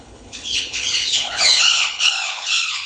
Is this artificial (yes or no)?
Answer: yes